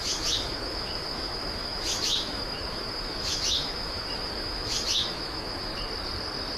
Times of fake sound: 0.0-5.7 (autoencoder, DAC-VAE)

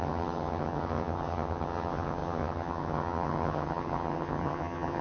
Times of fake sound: 0.0-5.0 (vocoder, HiFi-GAN)

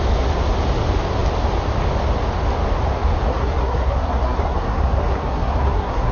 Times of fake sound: 3.3-6.1 (codec, SNAC)

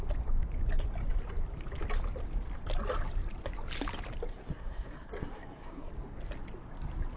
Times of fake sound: 4.3-5.9 (codec, SNAC)

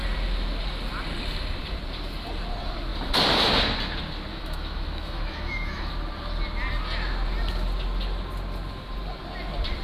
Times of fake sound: 4.3-5.9 (autoencoder, DAC-VAE)

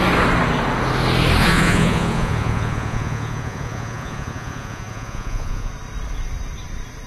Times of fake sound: 1.4-5.7 (vocoder, Vocos)